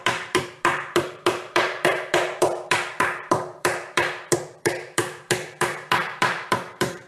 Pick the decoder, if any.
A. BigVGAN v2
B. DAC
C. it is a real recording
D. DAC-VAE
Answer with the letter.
A